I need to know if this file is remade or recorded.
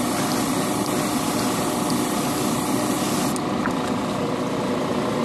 recorded